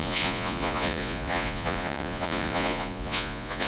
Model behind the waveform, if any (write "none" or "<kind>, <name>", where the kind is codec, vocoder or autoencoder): vocoder, Vocos